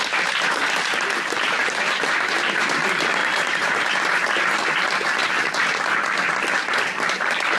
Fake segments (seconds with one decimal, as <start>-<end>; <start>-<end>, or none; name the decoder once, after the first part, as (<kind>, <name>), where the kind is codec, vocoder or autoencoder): 1.6-2.8 (vocoder, BigVGAN v2); 3.2-3.9

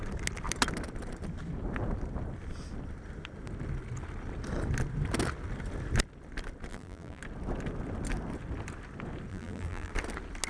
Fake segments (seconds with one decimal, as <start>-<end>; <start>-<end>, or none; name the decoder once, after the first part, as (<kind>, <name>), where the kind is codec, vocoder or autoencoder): 6.7-7.2 (vocoder, BigVGAN v2); 9.3-9.9

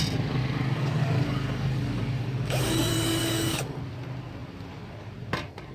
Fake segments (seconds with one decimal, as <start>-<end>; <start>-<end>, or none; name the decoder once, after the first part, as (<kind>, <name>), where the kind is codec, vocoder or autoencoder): 0.4-3.8 (codec, DAC)

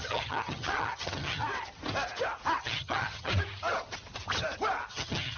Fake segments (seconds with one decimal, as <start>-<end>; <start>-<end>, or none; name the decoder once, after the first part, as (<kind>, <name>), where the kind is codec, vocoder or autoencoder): 0.0-1.4 (vocoder, HiFi-GAN); 2.6-3.3; 4.9-5.4

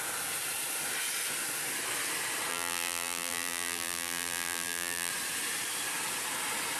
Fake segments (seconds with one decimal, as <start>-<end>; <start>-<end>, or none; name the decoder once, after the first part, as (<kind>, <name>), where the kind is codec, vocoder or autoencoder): 2.5-5.1 (vocoder, BigVGAN v2)

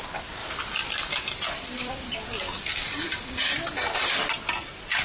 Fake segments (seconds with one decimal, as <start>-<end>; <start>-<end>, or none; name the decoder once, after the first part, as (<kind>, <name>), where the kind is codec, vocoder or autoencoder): 0.4-3.4 (vocoder, BigVGAN v2)